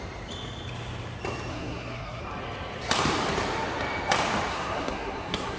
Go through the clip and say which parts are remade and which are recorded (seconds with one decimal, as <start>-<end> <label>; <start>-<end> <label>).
0.0-1.5 recorded; 1.5-2.2 remade; 2.2-4.5 recorded; 4.5-5.6 remade